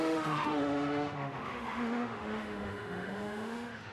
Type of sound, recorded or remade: remade